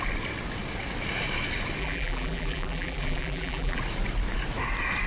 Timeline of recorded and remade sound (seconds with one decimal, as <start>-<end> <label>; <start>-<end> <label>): 0.0-1.8 recorded; 1.8-3.8 remade; 3.8-5.1 recorded